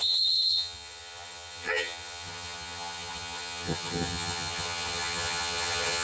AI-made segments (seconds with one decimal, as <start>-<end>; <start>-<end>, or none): 0.0-6.0